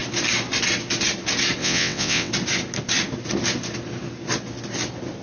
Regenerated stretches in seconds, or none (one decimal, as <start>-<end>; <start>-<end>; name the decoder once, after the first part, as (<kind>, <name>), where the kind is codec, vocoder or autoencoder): 1.6-2.3 (vocoder, WaveNeXt)